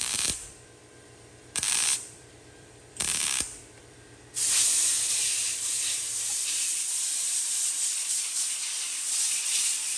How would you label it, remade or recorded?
remade